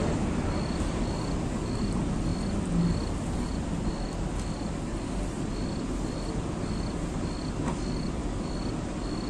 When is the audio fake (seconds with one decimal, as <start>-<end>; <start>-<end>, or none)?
none